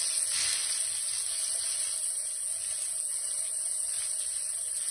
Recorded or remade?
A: recorded